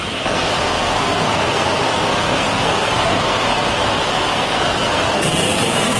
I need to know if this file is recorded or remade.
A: remade